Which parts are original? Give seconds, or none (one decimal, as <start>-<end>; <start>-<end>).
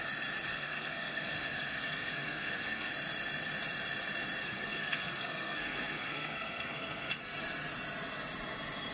0.0-0.5; 2.9-4.4; 7.2-8.9